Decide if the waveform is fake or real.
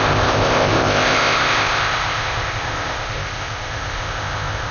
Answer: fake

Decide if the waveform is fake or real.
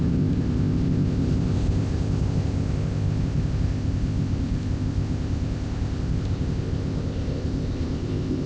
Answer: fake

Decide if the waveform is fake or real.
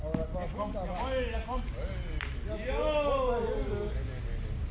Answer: real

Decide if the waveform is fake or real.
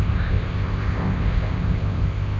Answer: fake